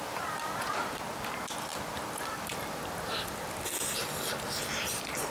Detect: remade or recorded recorded